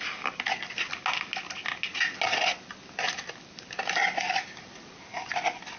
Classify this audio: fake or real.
real